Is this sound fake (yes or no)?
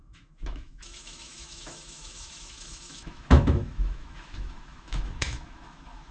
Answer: yes